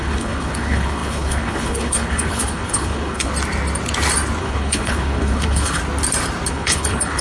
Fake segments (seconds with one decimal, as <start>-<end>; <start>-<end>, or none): 0.0-3.3; 4.4-5.8; 6.5-7.2